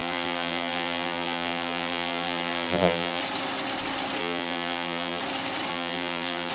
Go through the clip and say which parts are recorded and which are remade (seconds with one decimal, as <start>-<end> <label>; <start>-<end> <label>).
0.0-3.2 remade; 3.2-4.2 recorded; 4.2-5.2 remade; 5.2-5.7 recorded; 5.7-6.5 remade